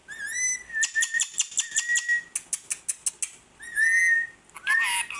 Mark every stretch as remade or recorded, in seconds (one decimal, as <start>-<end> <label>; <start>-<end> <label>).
0.0-5.2 recorded